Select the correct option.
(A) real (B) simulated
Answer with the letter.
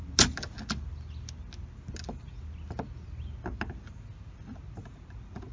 A